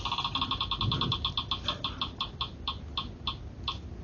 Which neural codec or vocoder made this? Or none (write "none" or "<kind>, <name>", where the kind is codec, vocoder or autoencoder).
none